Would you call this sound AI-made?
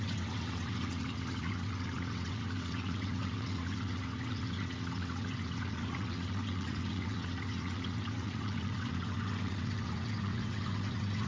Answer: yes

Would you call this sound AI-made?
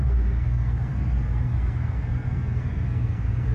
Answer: yes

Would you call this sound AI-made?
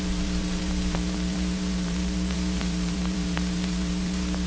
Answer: yes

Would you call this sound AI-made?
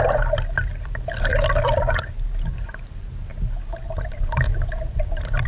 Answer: no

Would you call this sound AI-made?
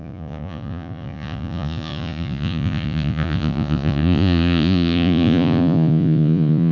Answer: yes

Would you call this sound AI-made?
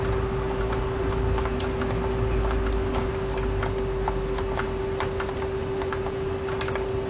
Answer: no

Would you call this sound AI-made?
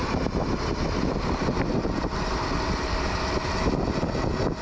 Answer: no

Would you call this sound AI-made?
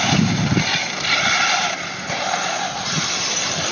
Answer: no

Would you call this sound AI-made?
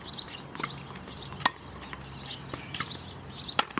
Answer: no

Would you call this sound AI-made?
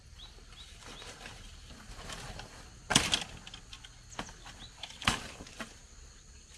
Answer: no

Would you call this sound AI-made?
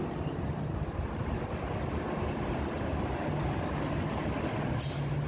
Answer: no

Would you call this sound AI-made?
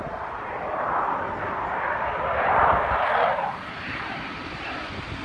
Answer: yes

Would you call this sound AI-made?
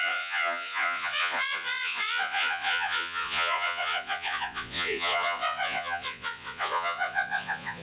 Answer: yes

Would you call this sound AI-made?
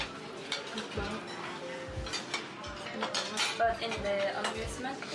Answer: no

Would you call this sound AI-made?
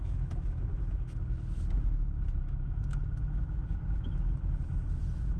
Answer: yes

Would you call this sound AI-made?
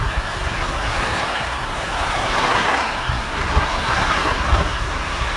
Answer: yes